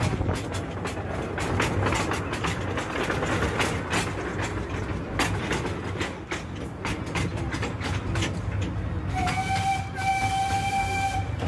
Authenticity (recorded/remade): recorded